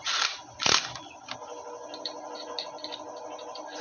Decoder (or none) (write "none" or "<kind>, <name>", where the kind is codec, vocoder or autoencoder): none